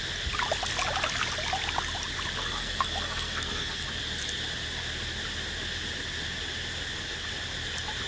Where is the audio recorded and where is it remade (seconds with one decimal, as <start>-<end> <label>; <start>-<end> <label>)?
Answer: 0.0-2.4 recorded; 2.4-4.0 remade; 4.0-8.1 recorded